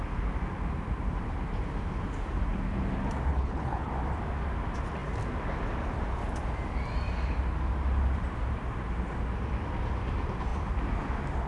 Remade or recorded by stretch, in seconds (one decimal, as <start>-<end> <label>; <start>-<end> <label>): 0.0-3.3 recorded; 3.3-3.9 remade; 3.9-11.5 recorded